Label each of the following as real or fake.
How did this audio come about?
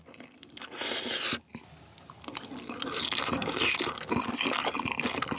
real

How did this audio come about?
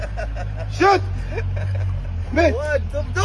real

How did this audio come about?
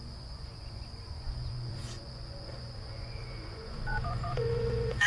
fake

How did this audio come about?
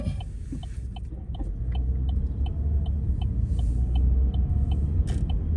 real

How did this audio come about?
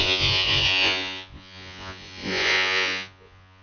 fake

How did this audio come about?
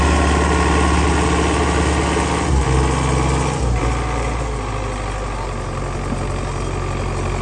real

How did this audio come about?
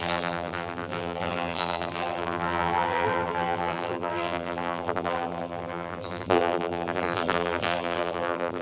fake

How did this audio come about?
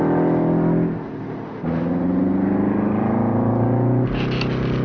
real